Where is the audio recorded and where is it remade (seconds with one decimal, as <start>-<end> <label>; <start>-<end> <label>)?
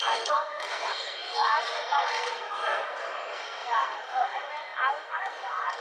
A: 0.0-5.8 remade